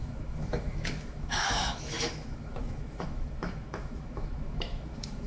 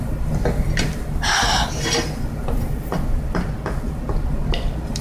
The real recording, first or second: second